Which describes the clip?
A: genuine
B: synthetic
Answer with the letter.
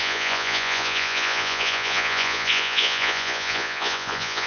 B